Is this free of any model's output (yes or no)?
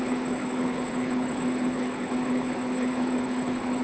no